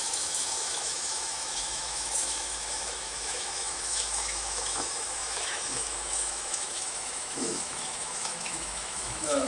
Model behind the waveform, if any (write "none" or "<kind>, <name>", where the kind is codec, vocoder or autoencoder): autoencoder, DAC-VAE